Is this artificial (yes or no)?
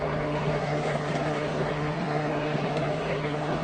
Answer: yes